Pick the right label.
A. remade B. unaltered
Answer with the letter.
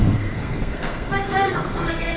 A